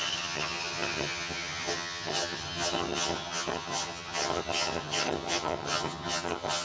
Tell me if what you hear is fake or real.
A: fake